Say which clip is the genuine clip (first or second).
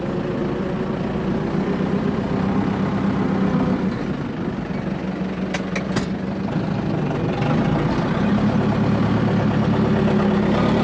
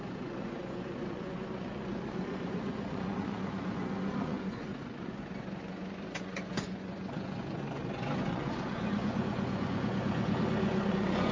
first